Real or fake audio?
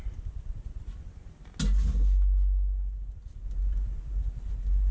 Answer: real